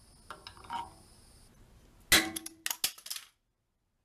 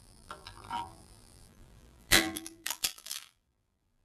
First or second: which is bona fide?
first